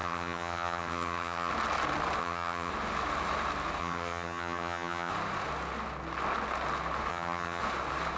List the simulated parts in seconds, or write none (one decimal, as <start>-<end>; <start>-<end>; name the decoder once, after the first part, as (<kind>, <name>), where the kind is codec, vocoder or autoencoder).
0.0-1.5 (vocoder, HiFi-GAN); 2.2-2.7; 3.8-5.1; 7.1-7.6